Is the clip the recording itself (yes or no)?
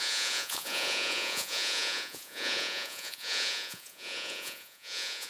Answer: no